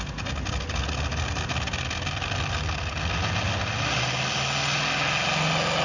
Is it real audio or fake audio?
real